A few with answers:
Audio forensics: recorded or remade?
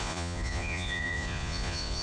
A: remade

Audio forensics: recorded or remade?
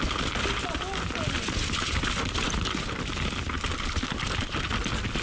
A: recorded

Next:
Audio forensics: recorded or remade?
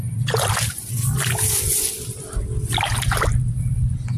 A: recorded